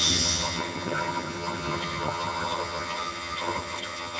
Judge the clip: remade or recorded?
remade